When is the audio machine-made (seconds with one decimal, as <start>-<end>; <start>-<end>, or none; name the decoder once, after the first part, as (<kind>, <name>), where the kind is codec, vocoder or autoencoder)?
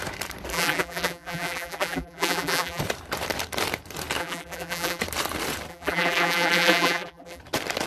0.5-2.8 (vocoder, BigVGAN v2); 4.2-5.0; 5.7-7.4